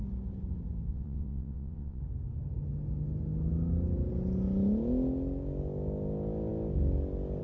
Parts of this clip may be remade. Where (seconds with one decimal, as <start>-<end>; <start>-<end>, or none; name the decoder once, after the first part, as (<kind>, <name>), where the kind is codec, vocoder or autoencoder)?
0.9-2.0 (vocoder, WaveNeXt)